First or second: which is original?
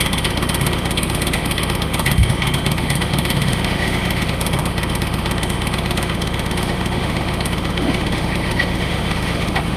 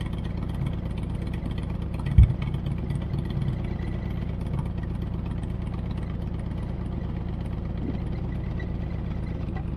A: second